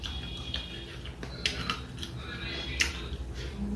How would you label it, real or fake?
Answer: real